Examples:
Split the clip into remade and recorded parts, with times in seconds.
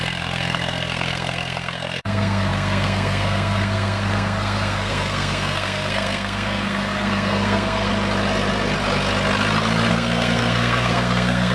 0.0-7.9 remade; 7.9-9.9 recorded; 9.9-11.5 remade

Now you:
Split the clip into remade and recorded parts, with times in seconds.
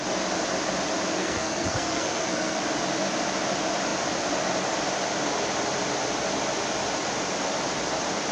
0.0-1.2 recorded; 1.2-2.6 remade; 2.6-8.3 recorded